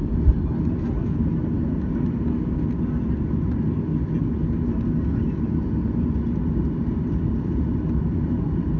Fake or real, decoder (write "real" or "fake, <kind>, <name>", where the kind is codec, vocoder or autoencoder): real